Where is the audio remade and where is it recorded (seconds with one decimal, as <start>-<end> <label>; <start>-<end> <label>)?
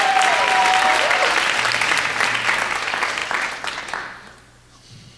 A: 0.0-5.2 recorded